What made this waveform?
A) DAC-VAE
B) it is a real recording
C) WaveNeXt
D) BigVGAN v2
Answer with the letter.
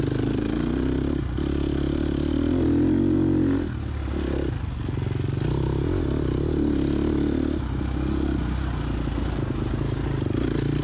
B